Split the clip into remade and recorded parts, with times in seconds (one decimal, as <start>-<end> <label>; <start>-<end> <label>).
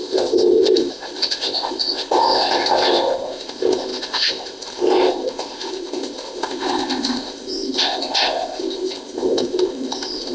0.0-10.3 remade